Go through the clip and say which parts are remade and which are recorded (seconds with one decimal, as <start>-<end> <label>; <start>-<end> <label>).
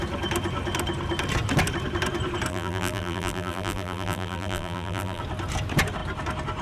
0.0-2.5 recorded; 2.5-5.2 remade; 5.2-6.6 recorded